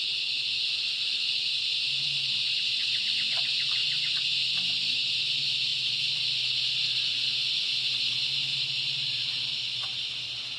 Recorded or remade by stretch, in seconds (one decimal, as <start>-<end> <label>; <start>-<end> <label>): 0.0-2.8 recorded; 2.8-3.4 remade; 3.4-8.5 recorded; 8.5-9.5 remade; 9.5-10.6 recorded